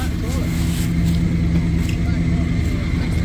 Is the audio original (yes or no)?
yes